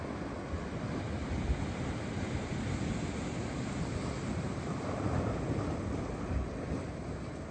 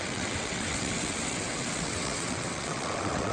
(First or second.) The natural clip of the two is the first